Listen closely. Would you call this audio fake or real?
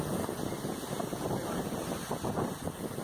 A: real